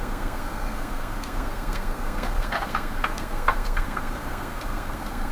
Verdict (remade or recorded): remade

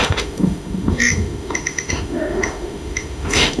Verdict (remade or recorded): remade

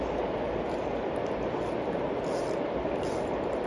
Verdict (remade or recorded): recorded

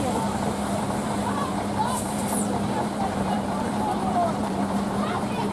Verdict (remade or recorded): remade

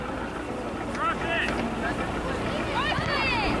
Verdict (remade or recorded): recorded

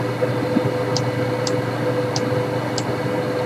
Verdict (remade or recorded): recorded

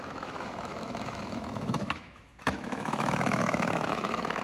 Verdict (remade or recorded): remade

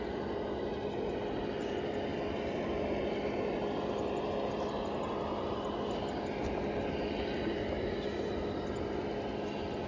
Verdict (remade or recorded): recorded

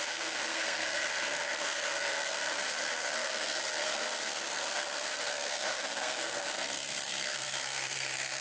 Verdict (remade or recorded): remade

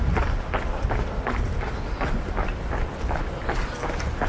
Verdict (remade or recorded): recorded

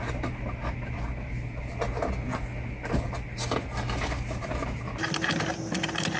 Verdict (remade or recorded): recorded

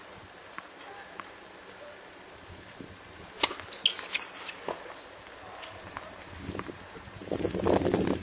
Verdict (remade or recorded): recorded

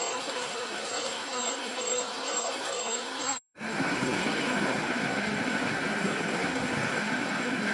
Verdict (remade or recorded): remade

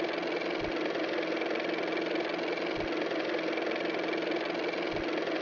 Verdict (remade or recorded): recorded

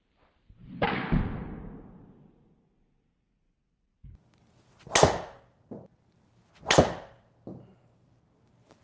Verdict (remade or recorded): recorded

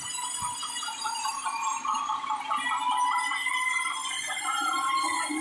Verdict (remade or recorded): recorded